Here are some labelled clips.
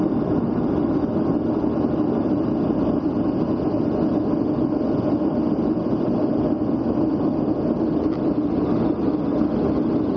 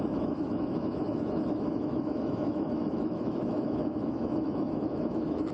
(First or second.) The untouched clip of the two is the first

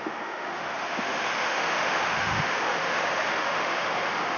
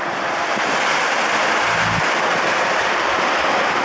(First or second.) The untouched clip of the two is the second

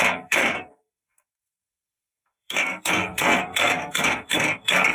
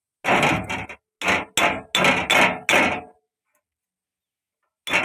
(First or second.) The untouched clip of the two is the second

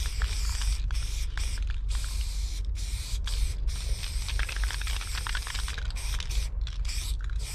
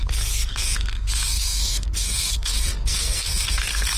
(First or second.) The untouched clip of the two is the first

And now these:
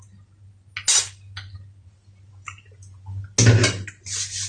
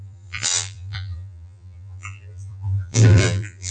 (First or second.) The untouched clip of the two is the first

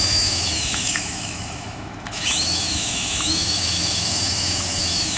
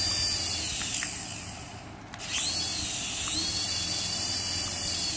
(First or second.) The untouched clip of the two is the second